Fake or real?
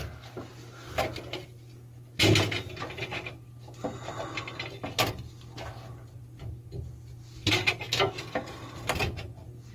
real